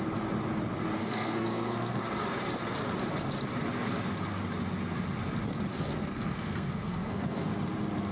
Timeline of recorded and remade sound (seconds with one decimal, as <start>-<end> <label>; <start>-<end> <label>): 0.0-1.0 recorded; 1.0-2.0 remade; 2.0-5.7 recorded; 5.7-7.5 remade; 7.5-8.1 recorded